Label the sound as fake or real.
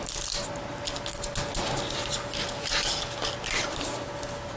real